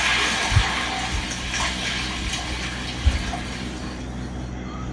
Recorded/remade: recorded